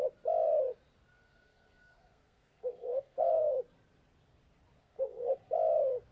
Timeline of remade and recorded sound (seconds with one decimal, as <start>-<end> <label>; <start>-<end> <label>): 0.0-1.1 recorded; 1.1-3.6 remade; 3.6-4.8 recorded; 4.8-5.4 remade; 5.4-6.1 recorded